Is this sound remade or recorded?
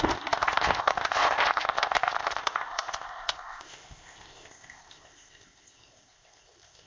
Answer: remade